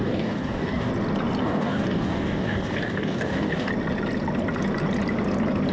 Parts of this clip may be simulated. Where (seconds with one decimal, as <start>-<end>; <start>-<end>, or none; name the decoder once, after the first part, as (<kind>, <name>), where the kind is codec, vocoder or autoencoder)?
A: 0.0-0.9 (codec, DAC); 1.4-3.7